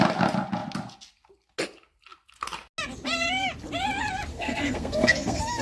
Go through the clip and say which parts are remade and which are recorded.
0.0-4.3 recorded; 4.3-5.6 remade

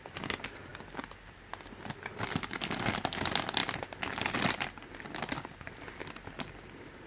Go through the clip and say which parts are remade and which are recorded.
0.0-0.7 recorded; 0.7-1.3 remade; 1.3-3.6 recorded; 3.6-7.1 remade